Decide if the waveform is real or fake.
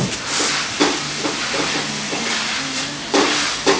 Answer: real